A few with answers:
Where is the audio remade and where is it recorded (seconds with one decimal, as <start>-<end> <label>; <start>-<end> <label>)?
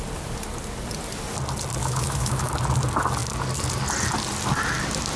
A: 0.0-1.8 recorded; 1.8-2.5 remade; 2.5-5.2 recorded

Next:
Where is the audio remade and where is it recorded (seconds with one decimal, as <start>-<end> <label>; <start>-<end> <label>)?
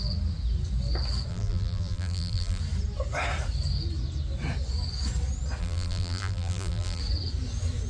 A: 0.0-1.3 recorded; 1.3-2.6 remade; 2.6-5.6 recorded; 5.6-7.0 remade; 7.0-7.9 recorded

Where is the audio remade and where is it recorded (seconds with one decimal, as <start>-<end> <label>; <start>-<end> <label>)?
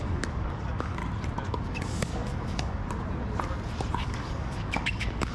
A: 0.0-1.0 remade; 1.0-1.5 recorded; 1.5-2.8 remade; 2.8-4.0 recorded; 4.0-5.3 remade